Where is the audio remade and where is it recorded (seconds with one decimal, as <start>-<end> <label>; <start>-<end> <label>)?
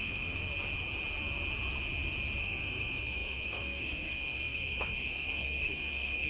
0.0-0.5 remade; 0.5-2.4 recorded; 2.4-6.3 remade